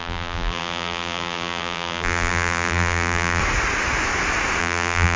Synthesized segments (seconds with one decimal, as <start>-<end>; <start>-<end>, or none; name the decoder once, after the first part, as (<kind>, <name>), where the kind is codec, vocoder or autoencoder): 0.0-3.4 (vocoder, BigVGAN v2); 4.6-5.2